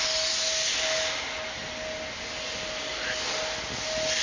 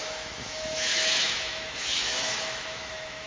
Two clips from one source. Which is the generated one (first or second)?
second